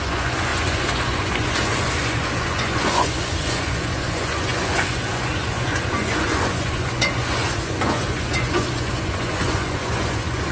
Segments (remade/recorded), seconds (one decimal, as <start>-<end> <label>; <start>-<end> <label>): 0.0-10.5 remade